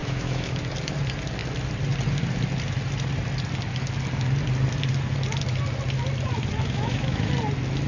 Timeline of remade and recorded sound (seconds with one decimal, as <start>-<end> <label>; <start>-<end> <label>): 0.0-0.6 remade; 0.6-6.6 recorded; 6.6-7.3 remade; 7.3-7.9 recorded